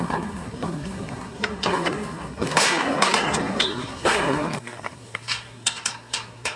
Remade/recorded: remade